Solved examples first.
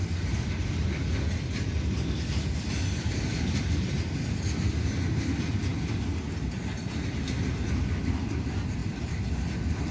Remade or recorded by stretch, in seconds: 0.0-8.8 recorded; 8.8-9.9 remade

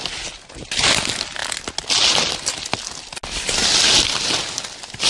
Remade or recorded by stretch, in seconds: 0.0-5.1 recorded

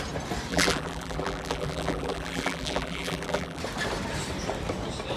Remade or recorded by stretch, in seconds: 0.0-0.5 recorded; 0.5-3.6 remade; 3.6-5.2 recorded

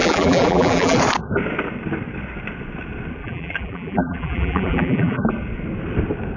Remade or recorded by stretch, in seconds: 0.0-1.0 remade; 1.0-3.2 recorded; 3.2-5.2 remade; 5.2-6.4 recorded

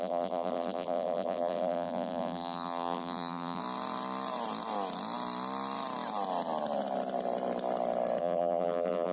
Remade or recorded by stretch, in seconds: 0.0-3.6 remade; 3.6-8.2 recorded; 8.2-9.1 remade

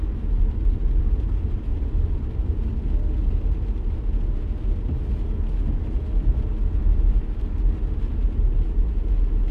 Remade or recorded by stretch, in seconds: 0.0-1.7 recorded; 1.7-2.7 remade; 2.7-9.5 recorded

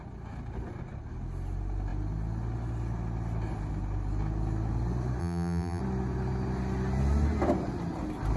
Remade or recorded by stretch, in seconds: 0.0-5.2 recorded; 5.2-5.8 remade; 5.8-8.4 recorded

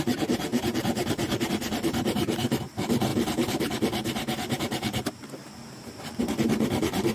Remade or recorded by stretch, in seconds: 0.0-7.1 remade